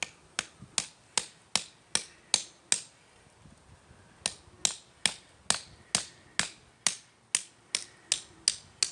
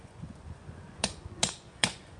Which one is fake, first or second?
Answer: second